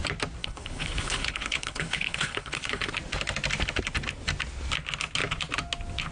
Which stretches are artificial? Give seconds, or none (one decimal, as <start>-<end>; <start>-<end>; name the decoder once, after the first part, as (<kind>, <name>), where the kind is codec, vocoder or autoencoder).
0.4-2.9 (codec, HILCodec)